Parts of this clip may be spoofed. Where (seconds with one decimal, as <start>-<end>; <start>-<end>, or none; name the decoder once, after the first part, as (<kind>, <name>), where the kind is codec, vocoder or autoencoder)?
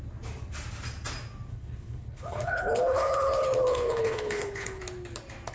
1.5-4.8 (codec, HILCodec)